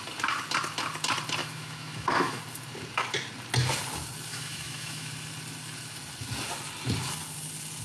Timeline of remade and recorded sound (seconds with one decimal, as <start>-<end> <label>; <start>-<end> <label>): 0.0-1.4 recorded; 1.4-2.4 remade; 2.4-4.3 recorded; 4.3-5.1 remade; 5.1-7.8 recorded